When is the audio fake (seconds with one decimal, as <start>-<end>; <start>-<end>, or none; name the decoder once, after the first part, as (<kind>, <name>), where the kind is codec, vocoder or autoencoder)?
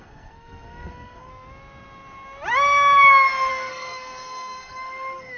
0.0-1.3 (codec, SNAC); 3.5-5.4